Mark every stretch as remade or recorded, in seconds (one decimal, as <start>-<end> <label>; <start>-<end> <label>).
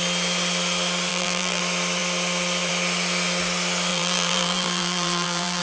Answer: 0.0-1.1 recorded; 1.1-1.6 remade; 1.6-3.9 recorded; 3.9-5.6 remade